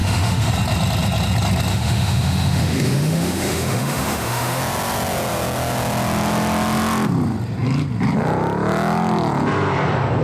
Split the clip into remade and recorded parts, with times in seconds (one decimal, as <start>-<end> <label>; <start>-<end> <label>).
0.0-0.5 remade; 0.5-1.7 recorded; 1.7-4.6 remade; 4.6-10.2 recorded